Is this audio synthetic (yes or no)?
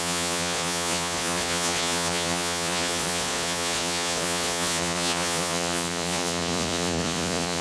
yes